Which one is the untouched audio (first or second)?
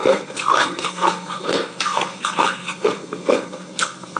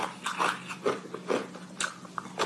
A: second